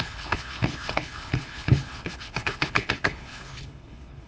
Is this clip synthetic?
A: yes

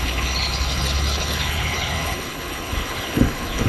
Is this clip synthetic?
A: yes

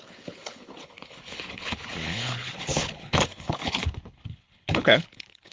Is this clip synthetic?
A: yes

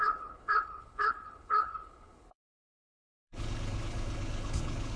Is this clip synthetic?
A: yes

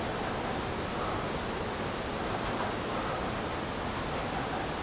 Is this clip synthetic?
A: no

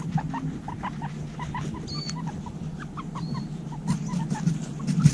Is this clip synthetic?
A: no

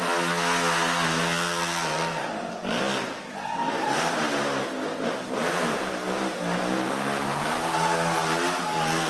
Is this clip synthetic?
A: no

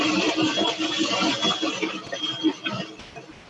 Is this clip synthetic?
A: no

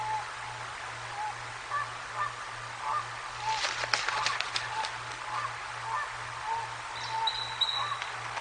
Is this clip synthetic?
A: no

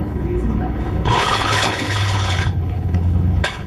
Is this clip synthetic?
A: yes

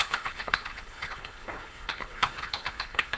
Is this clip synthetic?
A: yes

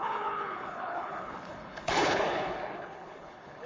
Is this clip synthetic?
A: yes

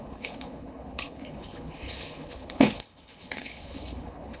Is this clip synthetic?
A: yes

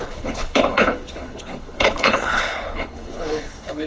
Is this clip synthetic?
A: yes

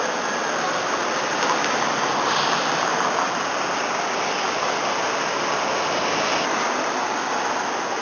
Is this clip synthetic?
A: no